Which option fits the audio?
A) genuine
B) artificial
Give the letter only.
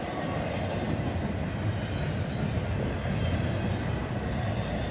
A